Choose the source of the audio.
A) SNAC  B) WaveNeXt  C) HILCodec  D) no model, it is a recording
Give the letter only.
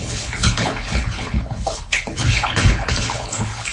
C